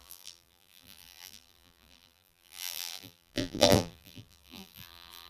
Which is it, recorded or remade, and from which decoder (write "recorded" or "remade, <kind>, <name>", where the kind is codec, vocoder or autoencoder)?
remade, vocoder, BigVGAN v2